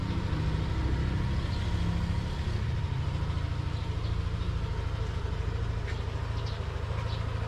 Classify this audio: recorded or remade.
recorded